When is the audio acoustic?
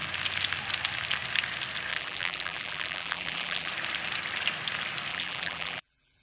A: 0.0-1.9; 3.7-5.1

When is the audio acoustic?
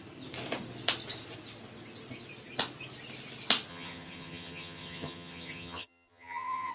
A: 0.0-3.7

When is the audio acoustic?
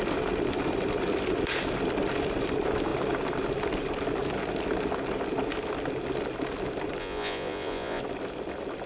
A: 0.0-7.0; 8.0-8.9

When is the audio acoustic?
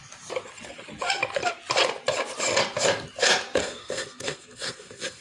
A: 0.0-3.6